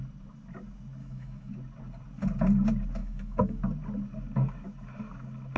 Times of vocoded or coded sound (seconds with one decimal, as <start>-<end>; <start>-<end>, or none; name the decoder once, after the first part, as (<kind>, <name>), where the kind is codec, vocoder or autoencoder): 1.0-1.5 (autoencoder, DAC-VAE); 3.0-3.6